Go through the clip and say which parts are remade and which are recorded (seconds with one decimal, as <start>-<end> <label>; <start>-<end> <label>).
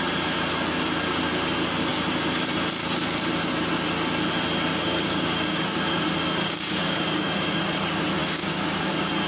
0.0-4.7 recorded; 4.7-7.6 remade; 7.6-8.2 recorded; 8.2-8.9 remade; 8.9-9.3 recorded